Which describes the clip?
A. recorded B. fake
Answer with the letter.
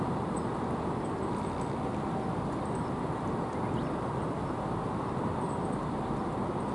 A